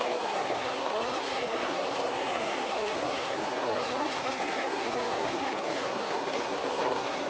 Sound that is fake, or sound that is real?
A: fake